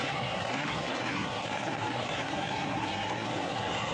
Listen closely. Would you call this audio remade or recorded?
remade